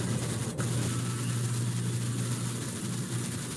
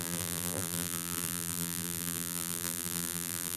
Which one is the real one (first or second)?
first